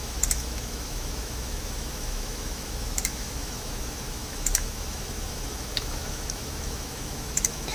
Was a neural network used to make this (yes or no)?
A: yes